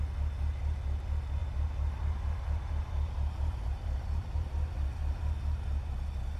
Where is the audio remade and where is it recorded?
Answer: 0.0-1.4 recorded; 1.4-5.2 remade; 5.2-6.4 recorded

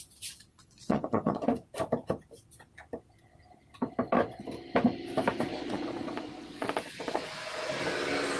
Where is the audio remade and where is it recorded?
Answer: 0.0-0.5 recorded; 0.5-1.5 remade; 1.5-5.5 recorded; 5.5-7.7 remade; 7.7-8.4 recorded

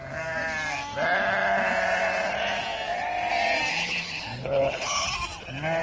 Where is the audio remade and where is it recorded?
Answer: 0.0-3.7 recorded; 3.7-5.1 remade; 5.1-5.8 recorded

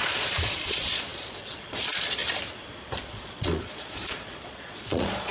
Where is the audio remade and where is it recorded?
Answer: 0.0-2.2 remade; 2.2-3.0 recorded; 3.0-5.3 remade